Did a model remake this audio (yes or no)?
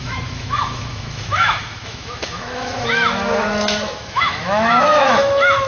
yes